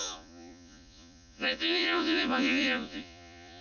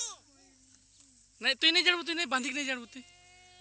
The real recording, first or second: second